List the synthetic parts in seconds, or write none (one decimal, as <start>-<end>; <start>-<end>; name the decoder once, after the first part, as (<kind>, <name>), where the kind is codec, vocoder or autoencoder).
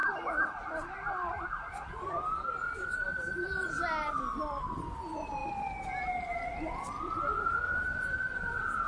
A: none